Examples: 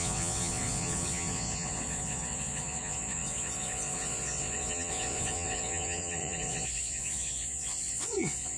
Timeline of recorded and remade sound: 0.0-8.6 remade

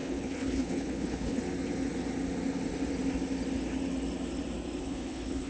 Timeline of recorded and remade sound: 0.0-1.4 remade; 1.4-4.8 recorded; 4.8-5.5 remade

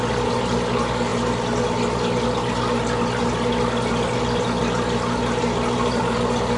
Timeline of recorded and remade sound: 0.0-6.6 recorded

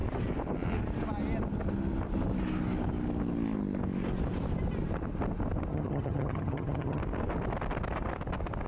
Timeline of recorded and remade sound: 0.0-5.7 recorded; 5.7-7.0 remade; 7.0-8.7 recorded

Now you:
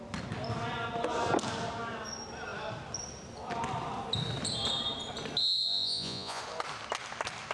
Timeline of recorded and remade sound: 0.0-5.4 recorded; 5.4-6.4 remade; 6.4-7.5 recorded

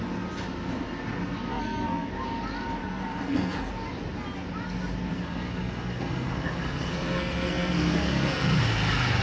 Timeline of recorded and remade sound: 0.0-1.5 recorded; 1.5-2.1 remade; 2.1-2.8 recorded; 2.8-3.7 remade; 3.7-5.1 recorded; 5.1-8.6 remade; 8.6-9.2 recorded